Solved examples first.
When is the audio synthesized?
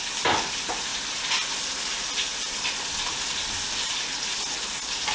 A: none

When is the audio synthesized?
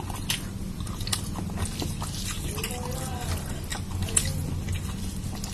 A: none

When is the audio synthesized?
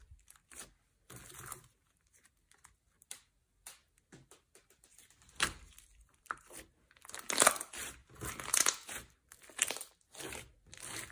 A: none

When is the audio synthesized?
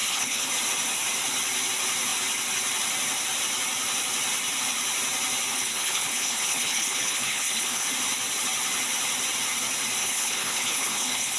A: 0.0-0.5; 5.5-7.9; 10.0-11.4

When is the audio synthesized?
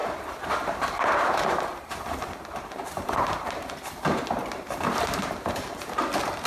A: 0.0-3.9; 4.4-6.0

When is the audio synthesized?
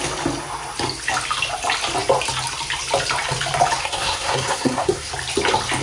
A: 3.8-5.1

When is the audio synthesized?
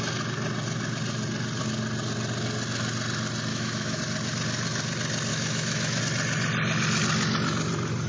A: 3.5-4.0; 5.3-6.0